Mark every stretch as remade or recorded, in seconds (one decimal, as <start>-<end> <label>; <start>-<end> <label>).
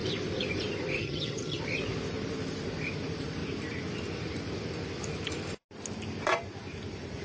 0.0-1.0 recorded; 1.0-1.6 remade; 1.6-7.2 recorded